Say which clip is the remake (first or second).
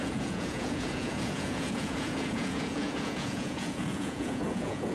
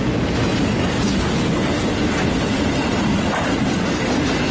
first